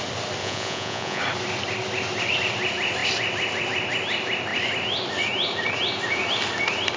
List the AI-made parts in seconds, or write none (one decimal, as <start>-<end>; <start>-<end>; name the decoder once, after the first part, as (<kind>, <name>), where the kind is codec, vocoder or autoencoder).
0.4-1.2 (vocoder, Vocos)